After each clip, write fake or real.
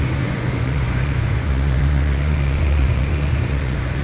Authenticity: fake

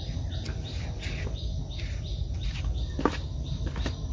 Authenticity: real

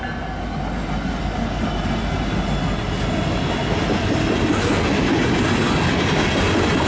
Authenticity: real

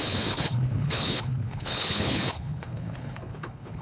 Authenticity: fake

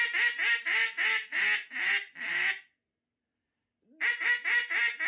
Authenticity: real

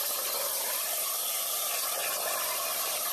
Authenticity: real